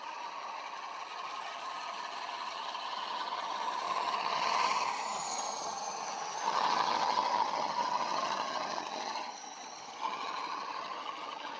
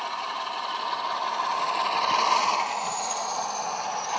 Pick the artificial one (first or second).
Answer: first